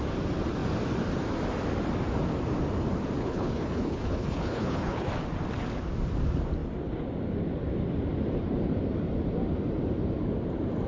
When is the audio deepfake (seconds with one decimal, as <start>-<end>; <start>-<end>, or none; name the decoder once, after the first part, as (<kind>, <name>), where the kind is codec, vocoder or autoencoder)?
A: 3.2-5.1 (codec, HILCodec)